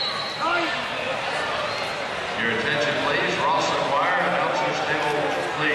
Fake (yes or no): no